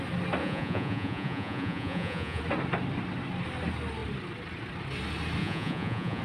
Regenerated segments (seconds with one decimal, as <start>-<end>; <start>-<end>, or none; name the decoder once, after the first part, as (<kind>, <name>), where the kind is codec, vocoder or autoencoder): 0.4-2.4 (vocoder, Vocos); 5.4-6.2